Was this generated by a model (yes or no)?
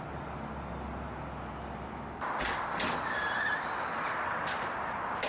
no